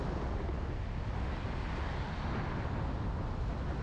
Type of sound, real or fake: real